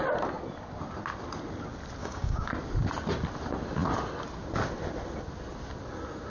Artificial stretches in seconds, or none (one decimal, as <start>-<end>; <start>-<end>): 2.0-2.5